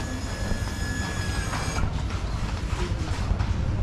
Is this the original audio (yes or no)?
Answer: yes